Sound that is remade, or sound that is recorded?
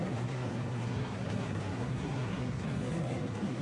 remade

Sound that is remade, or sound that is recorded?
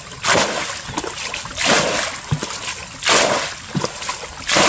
recorded